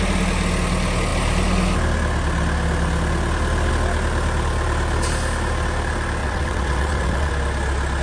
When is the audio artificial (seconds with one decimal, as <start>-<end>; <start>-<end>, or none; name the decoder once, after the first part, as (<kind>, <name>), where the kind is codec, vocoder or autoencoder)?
6.2-7.3 (vocoder, WaveNeXt)